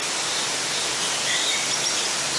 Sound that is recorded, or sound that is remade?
recorded